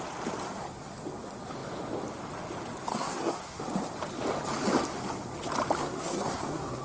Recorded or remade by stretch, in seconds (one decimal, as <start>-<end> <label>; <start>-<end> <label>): 0.0-2.9 recorded; 2.9-3.6 remade; 3.6-5.8 recorded; 5.8-6.8 remade